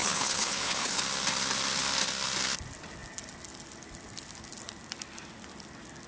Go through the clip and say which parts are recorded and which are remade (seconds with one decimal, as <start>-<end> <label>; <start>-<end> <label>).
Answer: 0.0-1.0 remade; 1.0-6.1 recorded